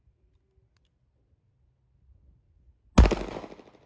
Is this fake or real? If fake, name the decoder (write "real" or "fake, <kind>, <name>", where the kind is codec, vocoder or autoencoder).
real